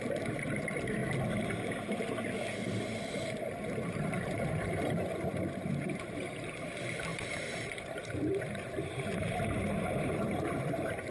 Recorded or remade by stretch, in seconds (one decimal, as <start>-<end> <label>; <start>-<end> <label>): 0.0-1.0 remade; 1.0-3.1 recorded; 3.1-11.1 remade